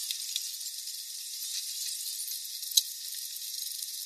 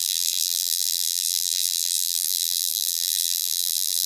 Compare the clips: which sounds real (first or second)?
first